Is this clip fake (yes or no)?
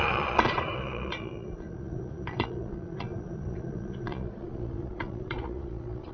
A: yes